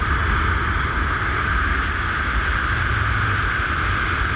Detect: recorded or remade recorded